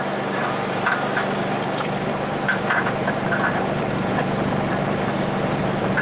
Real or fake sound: fake